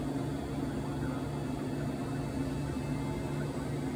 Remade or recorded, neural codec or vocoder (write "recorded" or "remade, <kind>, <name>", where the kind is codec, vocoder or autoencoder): recorded